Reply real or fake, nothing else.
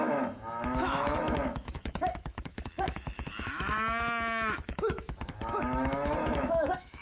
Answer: fake